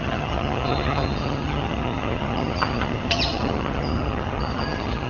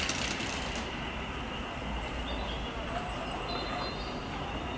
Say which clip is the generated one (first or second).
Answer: first